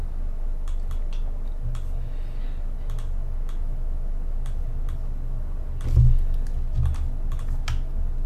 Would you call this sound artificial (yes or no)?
no